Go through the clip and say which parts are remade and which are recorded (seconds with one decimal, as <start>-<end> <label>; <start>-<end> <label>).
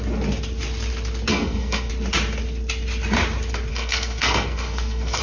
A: 0.0-1.3 recorded; 1.3-1.9 remade; 1.9-3.7 recorded; 3.7-5.2 remade